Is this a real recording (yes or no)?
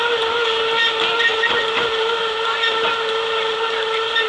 yes